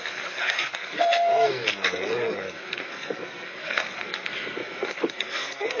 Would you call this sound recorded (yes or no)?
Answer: no